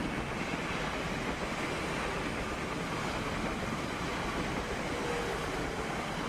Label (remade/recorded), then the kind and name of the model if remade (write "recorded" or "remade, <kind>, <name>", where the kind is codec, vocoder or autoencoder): recorded